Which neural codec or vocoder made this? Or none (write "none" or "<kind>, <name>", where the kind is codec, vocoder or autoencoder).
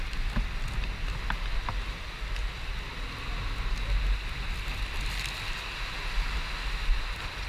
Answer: none